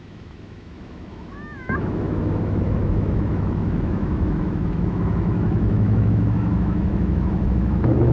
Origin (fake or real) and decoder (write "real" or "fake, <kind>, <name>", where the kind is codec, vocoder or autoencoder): fake, autoencoder, DAC-VAE